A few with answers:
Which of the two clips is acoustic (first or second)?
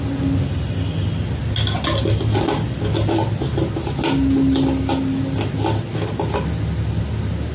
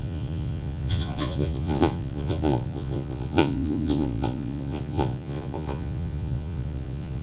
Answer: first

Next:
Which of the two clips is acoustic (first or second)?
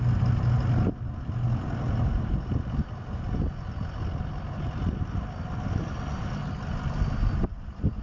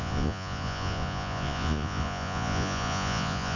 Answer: first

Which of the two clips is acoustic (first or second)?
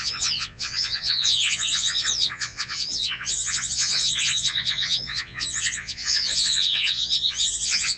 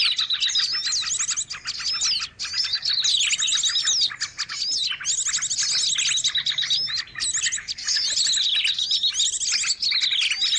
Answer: second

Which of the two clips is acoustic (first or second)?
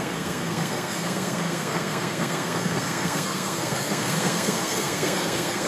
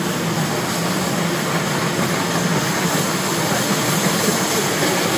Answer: second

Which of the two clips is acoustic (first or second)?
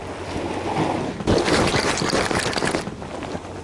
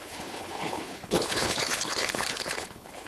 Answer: first